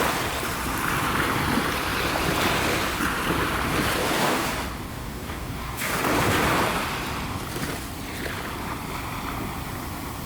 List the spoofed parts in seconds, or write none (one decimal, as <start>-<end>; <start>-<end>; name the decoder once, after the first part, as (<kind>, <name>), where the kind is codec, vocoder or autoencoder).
4.0-4.5 (codec, DAC); 4.9-6.0

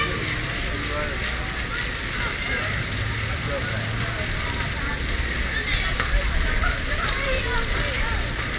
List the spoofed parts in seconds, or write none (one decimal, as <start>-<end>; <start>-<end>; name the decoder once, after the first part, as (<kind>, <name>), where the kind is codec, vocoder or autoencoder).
none